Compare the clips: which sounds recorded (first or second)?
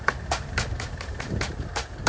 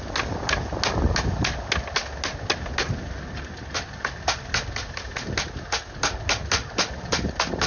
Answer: second